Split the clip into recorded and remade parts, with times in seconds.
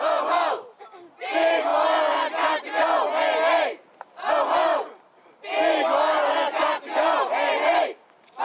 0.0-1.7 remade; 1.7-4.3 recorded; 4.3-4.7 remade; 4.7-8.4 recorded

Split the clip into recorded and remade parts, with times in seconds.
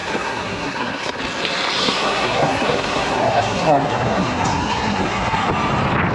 0.0-1.2 remade; 1.2-1.8 recorded; 1.8-5.5 remade; 5.5-6.1 recorded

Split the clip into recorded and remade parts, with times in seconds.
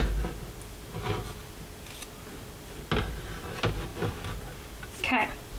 0.0-5.6 recorded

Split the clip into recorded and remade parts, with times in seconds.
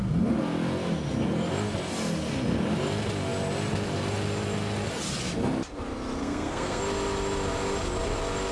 0.0-6.2 recorded; 6.2-6.8 remade; 6.8-8.5 recorded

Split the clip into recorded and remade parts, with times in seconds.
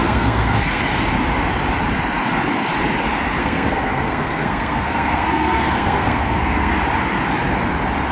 0.0-0.8 remade; 0.8-3.4 recorded; 3.4-6.7 remade; 6.7-8.1 recorded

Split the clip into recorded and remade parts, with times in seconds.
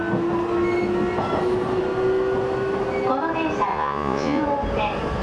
0.0-3.7 recorded; 3.7-4.4 remade; 4.4-5.2 recorded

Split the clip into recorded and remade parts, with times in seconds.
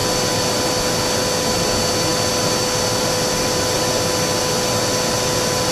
0.0-5.7 recorded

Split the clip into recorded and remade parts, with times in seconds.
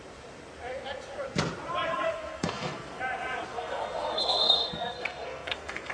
0.0-1.9 recorded; 1.9-3.0 remade; 3.0-3.5 recorded; 3.5-5.9 remade